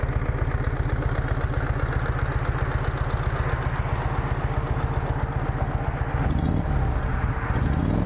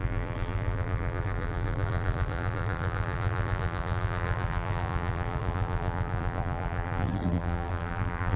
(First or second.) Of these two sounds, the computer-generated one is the second